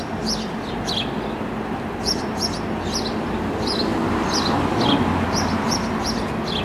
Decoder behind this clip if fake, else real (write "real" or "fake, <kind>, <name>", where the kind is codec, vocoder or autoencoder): real